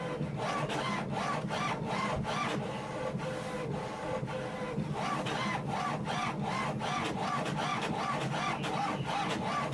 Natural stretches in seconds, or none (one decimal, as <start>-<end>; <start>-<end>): 0.0-9.7